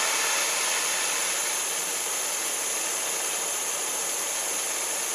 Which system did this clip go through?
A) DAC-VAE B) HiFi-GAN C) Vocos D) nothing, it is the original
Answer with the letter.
D